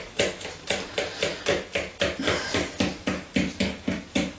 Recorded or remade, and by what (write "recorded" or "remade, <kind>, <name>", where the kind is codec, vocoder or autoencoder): recorded